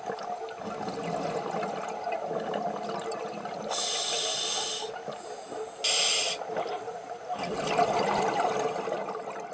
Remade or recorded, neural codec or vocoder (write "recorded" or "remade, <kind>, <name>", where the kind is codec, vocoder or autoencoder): recorded